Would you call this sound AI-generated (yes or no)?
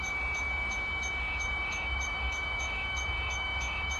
yes